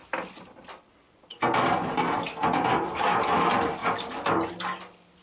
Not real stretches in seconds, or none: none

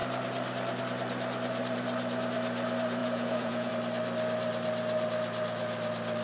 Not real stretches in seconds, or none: 3.0-3.7 (vocoder, Vocos)

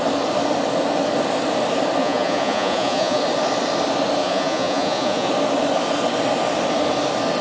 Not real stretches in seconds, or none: 2.0-3.2 (vocoder, Vocos); 4.2-5.3

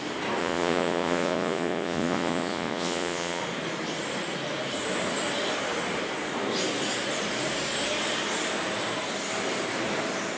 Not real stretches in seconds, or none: 0.4-3.4 (vocoder, Vocos)

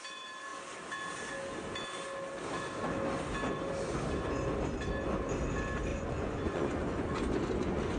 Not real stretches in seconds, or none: 5.9-8.0 (vocoder, Vocos)

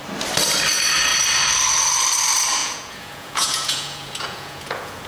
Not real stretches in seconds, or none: 2.6-5.1 (vocoder, Vocos)

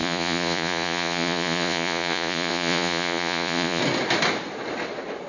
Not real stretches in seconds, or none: 0.0-3.8 (vocoder, Vocos)